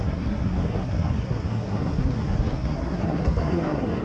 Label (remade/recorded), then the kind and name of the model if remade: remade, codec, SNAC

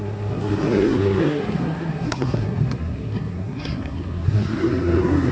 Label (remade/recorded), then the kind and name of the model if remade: remade, codec, SNAC